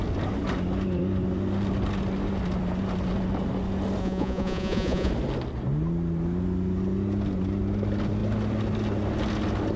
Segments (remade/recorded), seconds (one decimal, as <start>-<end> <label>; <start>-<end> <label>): 0.0-4.0 recorded; 4.0-5.1 remade; 5.1-9.8 recorded